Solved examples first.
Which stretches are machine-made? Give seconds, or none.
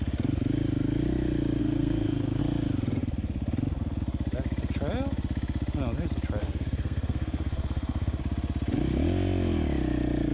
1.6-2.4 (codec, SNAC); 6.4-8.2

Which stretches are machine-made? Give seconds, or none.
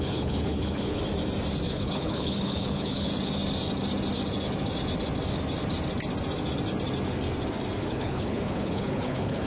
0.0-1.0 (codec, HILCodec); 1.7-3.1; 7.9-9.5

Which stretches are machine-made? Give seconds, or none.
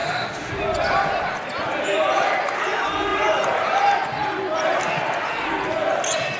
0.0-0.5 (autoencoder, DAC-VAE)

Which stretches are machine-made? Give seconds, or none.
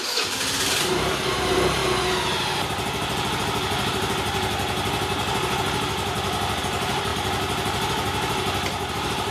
0.0-1.8 (vocoder, BigVGAN v2); 6.6-7.1; 8.9-9.3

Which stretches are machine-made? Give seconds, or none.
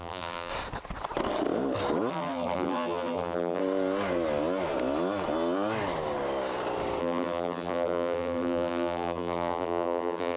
0.0-0.5 (vocoder, BigVGAN v2); 2.1-3.6; 7.0-10.4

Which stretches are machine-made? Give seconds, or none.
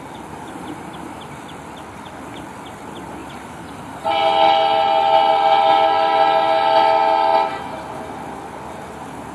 none